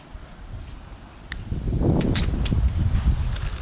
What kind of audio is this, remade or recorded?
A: recorded